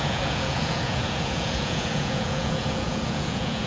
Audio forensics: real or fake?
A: fake